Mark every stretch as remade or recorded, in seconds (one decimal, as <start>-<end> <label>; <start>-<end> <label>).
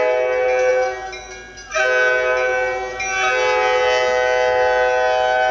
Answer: 0.0-5.5 recorded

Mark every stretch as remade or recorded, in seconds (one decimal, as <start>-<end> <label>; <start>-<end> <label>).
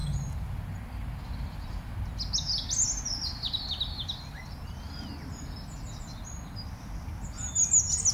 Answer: 0.0-8.1 recorded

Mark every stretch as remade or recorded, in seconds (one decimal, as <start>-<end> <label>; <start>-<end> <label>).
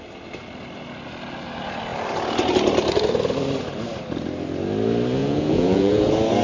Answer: 0.0-5.2 recorded; 5.2-6.0 remade; 6.0-6.4 recorded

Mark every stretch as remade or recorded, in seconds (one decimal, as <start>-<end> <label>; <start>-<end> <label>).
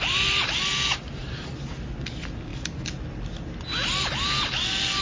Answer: 0.0-5.0 recorded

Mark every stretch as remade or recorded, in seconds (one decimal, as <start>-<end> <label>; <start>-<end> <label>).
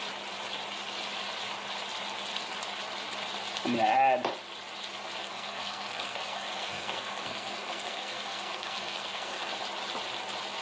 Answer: 0.0-5.2 recorded; 5.2-9.6 remade; 9.6-10.6 recorded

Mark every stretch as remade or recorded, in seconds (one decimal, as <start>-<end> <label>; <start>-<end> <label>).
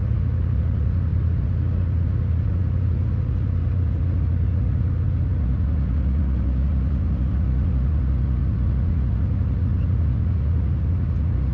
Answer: 0.0-11.5 remade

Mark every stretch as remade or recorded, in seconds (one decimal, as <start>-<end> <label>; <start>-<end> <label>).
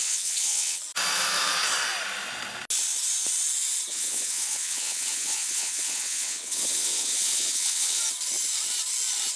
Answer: 0.0-0.8 remade; 0.8-3.9 recorded; 3.9-8.0 remade; 8.0-9.4 recorded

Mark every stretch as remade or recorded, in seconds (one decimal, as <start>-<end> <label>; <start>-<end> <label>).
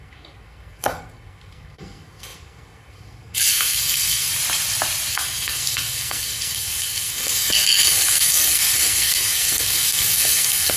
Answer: 0.0-4.3 remade; 4.3-5.1 recorded; 5.1-10.8 remade